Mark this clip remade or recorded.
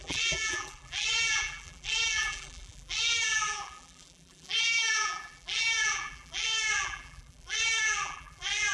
remade